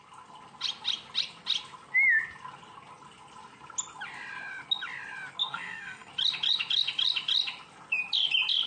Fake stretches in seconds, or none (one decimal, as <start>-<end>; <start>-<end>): 5.4-6.1